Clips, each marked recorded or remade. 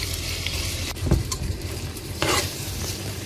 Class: remade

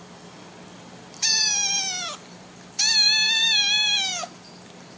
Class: remade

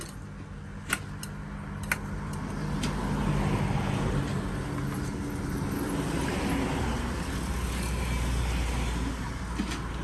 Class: recorded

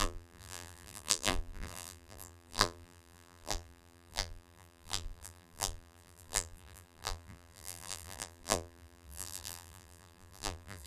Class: remade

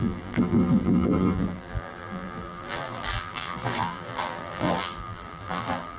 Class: remade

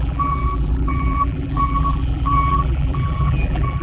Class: remade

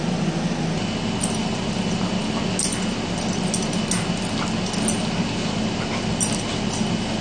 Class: recorded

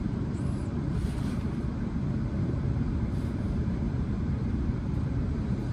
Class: remade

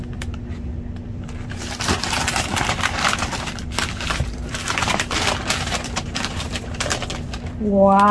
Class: remade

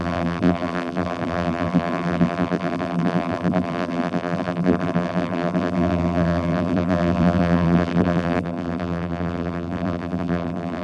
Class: remade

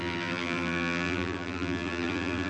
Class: remade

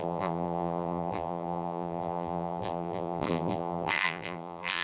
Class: remade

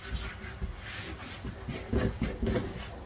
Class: recorded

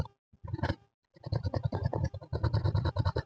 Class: recorded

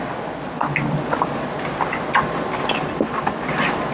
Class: recorded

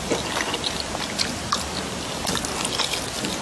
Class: recorded